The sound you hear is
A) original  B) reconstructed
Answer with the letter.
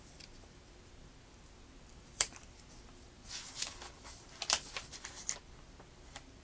A